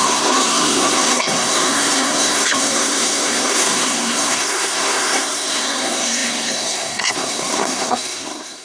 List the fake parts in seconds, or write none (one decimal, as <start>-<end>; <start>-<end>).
0.0-8.6